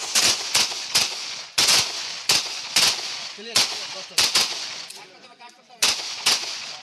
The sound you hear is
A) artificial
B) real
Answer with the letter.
A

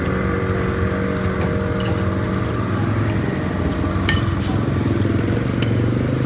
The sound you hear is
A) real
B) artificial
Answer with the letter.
A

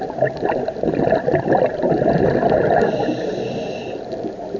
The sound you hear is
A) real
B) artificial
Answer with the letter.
A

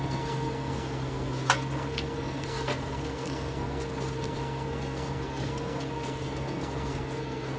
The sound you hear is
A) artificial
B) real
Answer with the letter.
A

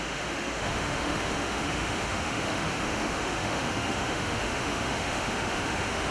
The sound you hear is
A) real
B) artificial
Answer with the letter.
B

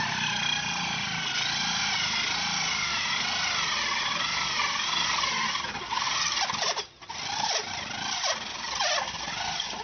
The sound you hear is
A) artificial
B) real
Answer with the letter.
B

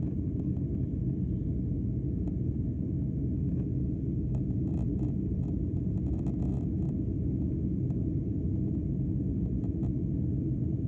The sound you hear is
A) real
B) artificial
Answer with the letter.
A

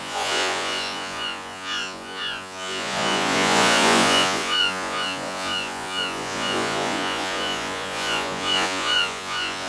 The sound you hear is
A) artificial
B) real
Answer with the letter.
A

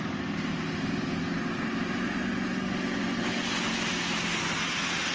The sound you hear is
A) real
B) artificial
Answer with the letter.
A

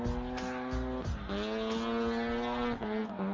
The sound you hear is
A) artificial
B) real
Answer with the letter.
B